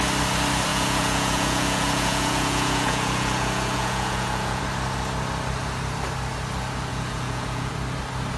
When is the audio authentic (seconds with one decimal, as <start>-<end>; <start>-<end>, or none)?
0.0-0.7; 4.6-6.9; 7.7-8.4

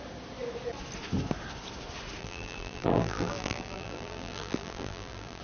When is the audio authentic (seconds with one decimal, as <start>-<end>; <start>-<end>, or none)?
0.0-2.2

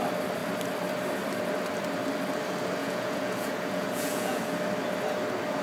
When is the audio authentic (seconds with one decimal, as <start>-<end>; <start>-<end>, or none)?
0.0-2.8; 4.4-5.6

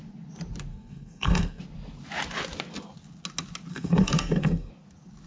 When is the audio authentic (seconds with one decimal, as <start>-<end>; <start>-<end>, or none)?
0.0-0.7; 1.6-3.7; 4.7-5.3

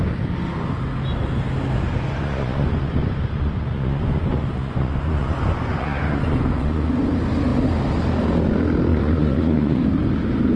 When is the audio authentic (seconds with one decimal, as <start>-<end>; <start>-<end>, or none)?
0.0-1.9; 6.9-8.9; 9.8-10.6

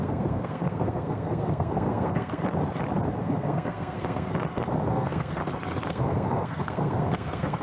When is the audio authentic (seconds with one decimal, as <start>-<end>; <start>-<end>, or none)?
2.4-3.2; 4.3-4.9; 5.4-5.9